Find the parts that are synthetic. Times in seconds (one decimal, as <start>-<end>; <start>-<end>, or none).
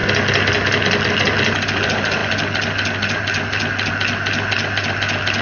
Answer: none